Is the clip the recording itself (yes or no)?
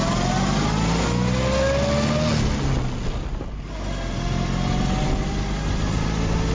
yes